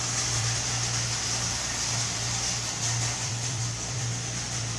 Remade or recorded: remade